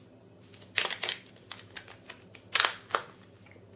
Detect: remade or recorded recorded